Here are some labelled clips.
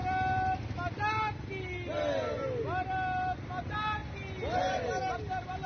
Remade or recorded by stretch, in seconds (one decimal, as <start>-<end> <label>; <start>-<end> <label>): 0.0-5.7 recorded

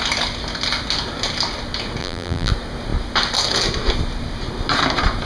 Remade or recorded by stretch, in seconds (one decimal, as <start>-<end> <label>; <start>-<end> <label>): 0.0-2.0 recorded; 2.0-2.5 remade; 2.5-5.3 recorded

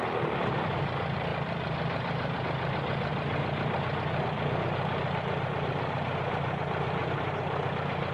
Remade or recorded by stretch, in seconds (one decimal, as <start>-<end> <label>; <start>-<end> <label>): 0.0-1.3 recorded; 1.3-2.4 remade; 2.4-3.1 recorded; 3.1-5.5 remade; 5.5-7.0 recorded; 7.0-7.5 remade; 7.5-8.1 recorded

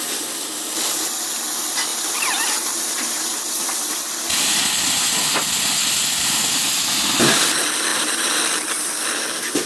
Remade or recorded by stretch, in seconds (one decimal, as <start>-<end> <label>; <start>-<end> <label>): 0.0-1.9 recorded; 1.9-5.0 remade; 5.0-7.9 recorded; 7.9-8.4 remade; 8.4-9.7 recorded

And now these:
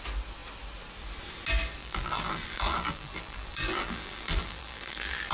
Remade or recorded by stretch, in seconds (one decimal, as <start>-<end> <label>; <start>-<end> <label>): 0.0-1.8 recorded; 1.8-5.3 remade

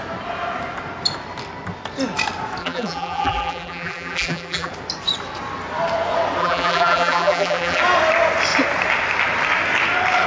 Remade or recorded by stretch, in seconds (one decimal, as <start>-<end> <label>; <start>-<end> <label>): 0.0-2.6 recorded; 2.6-4.7 remade; 4.7-6.4 recorded; 6.4-7.8 remade; 7.8-10.3 recorded

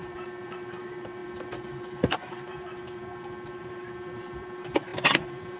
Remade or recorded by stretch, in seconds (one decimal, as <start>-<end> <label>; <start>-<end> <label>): 0.0-3.1 remade; 3.1-3.6 recorded; 3.6-5.6 remade